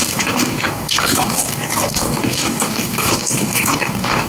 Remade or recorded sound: remade